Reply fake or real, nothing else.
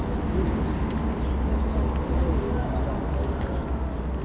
real